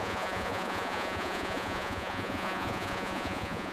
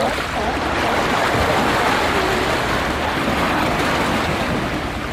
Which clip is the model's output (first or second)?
first